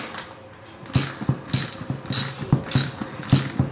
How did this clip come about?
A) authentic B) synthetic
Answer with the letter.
A